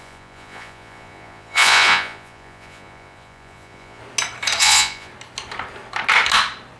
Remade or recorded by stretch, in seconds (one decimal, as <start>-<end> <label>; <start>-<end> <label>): 0.0-4.0 remade; 4.0-4.6 recorded; 4.6-5.1 remade; 5.1-6.8 recorded